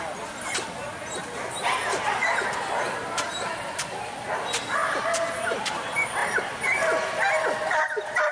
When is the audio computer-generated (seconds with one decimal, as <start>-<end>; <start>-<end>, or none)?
none